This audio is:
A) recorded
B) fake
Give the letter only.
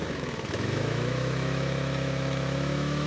B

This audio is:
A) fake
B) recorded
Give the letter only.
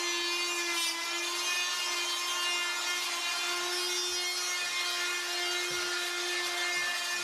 B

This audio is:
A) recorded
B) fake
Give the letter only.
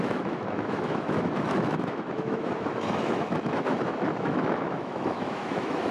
B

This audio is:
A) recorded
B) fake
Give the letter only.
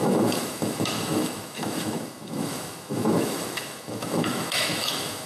B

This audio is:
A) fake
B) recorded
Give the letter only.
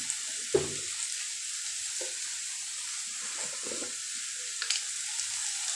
B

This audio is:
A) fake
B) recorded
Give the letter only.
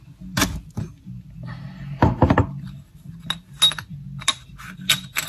B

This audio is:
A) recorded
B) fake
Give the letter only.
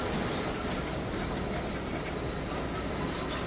A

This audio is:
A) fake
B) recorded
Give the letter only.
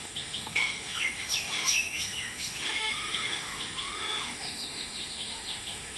A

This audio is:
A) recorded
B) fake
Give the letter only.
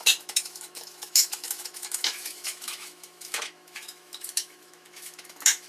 B